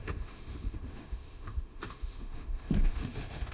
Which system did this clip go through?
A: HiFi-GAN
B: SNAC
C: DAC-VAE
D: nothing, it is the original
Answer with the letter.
C